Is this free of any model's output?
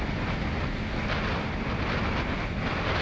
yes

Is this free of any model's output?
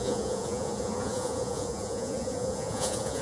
no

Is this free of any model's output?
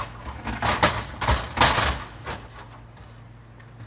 yes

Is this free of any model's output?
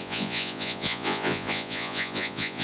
no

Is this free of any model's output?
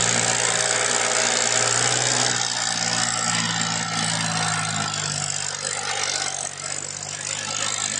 yes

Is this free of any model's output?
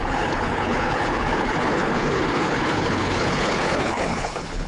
no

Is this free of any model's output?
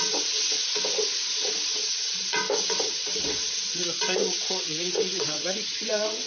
no